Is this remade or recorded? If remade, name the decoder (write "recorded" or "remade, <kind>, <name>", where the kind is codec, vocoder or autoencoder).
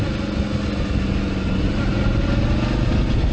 recorded